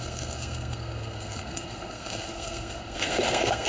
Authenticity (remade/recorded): remade